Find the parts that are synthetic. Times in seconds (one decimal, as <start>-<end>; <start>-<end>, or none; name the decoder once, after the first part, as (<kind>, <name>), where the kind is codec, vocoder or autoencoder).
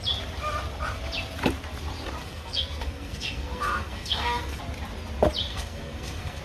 2.2-4.6 (codec, SNAC); 5.5-6.4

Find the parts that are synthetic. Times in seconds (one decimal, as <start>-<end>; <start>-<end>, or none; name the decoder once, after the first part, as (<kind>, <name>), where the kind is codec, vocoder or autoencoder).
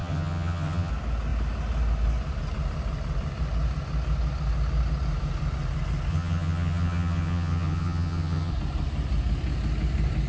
0.0-0.9 (vocoder, HiFi-GAN); 6.1-8.5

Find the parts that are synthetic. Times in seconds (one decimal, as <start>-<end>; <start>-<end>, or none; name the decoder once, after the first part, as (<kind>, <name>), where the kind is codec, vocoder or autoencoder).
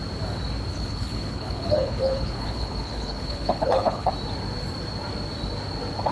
0.7-4.1 (codec, HILCodec)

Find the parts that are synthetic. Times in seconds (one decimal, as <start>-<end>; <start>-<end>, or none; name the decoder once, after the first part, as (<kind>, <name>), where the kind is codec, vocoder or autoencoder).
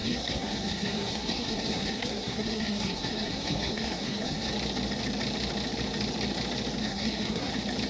0.0-4.5 (codec, SNAC); 6.8-7.5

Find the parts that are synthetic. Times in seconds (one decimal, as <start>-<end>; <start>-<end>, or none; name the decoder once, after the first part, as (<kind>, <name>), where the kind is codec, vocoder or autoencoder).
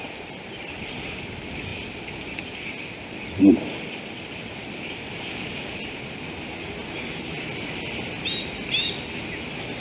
none